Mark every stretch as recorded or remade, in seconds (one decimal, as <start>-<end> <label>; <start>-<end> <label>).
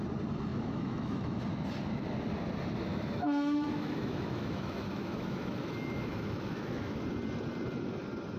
0.0-0.5 recorded; 0.5-1.4 remade; 1.4-2.9 recorded; 2.9-7.0 remade; 7.0-8.4 recorded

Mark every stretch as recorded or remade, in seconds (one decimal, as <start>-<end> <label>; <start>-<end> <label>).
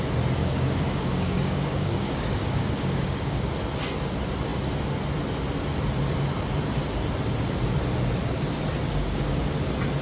0.0-0.4 recorded; 0.4-3.5 remade; 3.5-8.9 recorded; 8.9-9.5 remade; 9.5-10.0 recorded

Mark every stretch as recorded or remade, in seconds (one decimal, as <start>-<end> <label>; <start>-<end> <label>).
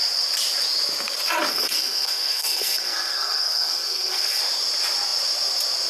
0.0-1.5 recorded; 1.5-4.4 remade; 4.4-5.9 recorded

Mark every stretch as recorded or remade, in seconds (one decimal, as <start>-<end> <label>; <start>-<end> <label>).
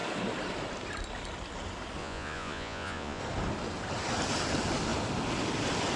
0.0-2.0 recorded; 2.0-3.2 remade; 3.2-6.0 recorded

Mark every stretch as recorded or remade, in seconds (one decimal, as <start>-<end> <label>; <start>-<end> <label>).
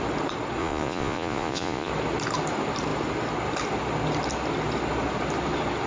0.0-0.6 recorded; 0.6-1.9 remade; 1.9-5.9 recorded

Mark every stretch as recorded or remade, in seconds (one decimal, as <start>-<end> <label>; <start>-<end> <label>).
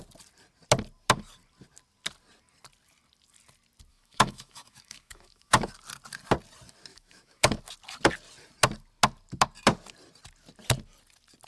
0.0-3.9 recorded; 3.9-5.7 remade; 5.7-6.9 recorded; 6.9-7.6 remade; 7.6-11.5 recorded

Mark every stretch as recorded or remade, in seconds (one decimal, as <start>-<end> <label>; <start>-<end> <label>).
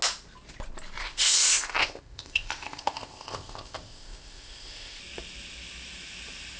0.0-1.0 recorded; 1.0-5.0 remade; 5.0-6.6 recorded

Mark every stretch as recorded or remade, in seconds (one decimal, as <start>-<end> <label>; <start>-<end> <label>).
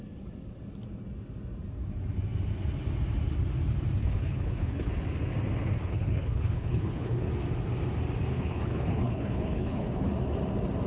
0.0-4.0 recorded; 4.0-4.9 remade; 4.9-5.8 recorded; 5.8-7.3 remade; 7.3-8.3 recorded; 8.3-10.1 remade; 10.1-10.9 recorded